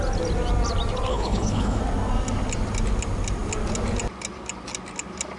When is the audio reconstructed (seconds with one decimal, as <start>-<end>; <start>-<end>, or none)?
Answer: 1.1-1.8